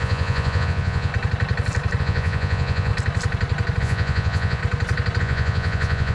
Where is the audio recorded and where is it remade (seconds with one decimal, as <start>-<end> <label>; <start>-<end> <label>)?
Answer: 0.0-1.1 remade; 1.1-2.0 recorded; 2.0-2.9 remade; 2.9-3.8 recorded; 3.8-4.6 remade; 4.6-5.2 recorded; 5.2-6.1 remade